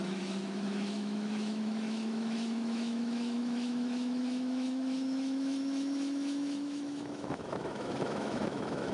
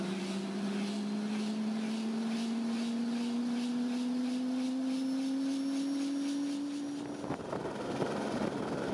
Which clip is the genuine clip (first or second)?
second